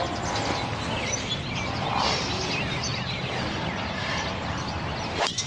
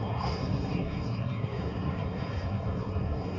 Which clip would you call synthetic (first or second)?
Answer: second